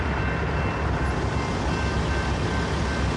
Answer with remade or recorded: recorded